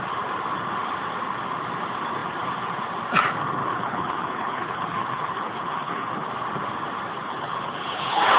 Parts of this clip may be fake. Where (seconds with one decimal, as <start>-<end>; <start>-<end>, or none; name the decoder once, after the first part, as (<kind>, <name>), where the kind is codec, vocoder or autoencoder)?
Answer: 3.6-6.3 (codec, HILCodec); 7.2-8.4